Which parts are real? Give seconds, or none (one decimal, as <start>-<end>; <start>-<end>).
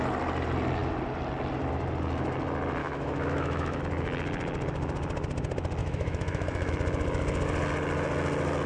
0.0-2.8; 3.8-5.8; 6.7-8.7